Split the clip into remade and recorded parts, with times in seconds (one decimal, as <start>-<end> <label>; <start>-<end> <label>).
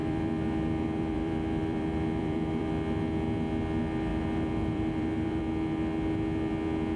0.0-2.7 remade; 2.7-4.1 recorded; 4.1-5.4 remade; 5.4-7.0 recorded